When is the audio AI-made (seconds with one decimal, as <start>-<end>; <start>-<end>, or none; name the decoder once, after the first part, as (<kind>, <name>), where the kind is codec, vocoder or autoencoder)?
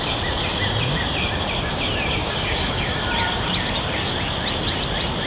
2.2-3.1 (codec, DAC)